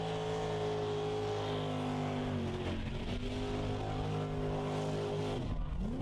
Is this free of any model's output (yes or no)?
yes